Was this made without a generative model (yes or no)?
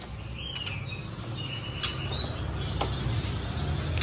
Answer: yes